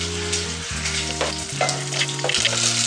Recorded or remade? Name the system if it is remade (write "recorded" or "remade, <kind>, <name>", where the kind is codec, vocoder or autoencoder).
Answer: recorded